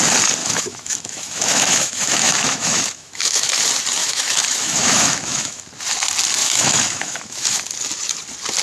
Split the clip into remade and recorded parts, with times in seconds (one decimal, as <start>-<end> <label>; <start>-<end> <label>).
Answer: 0.0-0.4 recorded; 0.4-3.6 remade; 3.6-4.0 recorded; 4.0-5.6 remade; 5.6-6.4 recorded; 6.4-7.6 remade; 7.6-8.6 recorded